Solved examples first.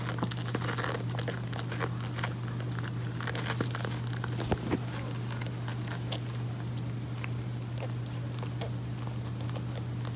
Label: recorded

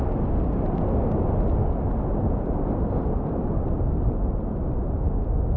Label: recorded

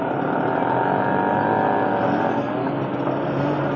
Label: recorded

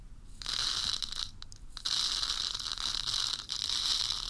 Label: recorded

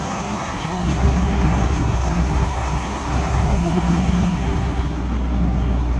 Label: remade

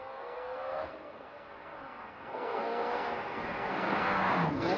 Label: remade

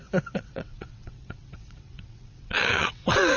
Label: remade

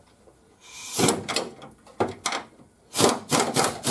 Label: recorded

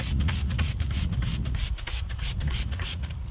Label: remade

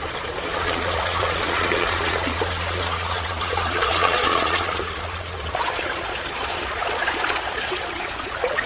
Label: remade